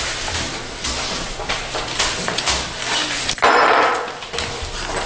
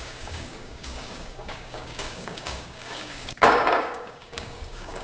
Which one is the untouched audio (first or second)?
first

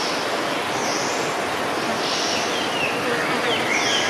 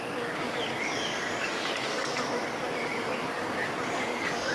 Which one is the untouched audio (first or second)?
first